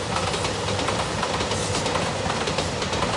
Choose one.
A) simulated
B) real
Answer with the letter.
B